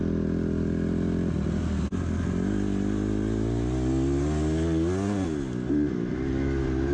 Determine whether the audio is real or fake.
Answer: real